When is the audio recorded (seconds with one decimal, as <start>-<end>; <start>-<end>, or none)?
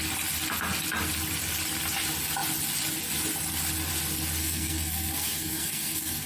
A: 0.0-4.4